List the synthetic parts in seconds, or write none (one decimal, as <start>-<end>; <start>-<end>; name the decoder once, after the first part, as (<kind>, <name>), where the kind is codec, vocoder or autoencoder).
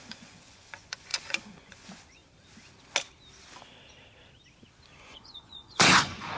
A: 0.0-2.2 (vocoder, Vocos); 5.0-6.4